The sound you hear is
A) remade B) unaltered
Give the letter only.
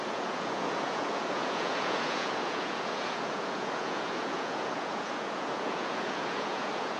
A